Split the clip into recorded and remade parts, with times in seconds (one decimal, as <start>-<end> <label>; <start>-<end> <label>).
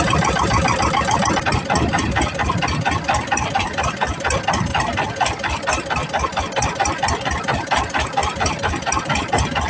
0.0-4.7 remade; 4.7-6.4 recorded; 6.4-9.7 remade